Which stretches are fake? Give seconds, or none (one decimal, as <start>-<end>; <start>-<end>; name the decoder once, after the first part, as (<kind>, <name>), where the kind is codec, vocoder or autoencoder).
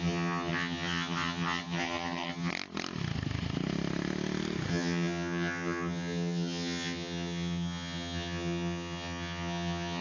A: 0.0-2.5 (vocoder, HiFi-GAN); 4.7-10.0